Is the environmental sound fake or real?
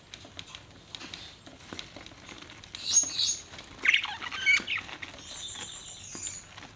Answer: real